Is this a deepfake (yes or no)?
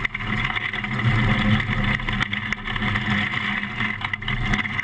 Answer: no